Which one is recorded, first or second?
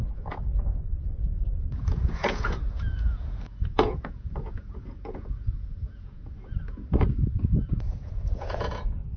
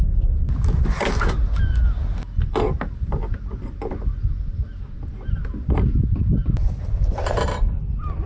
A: second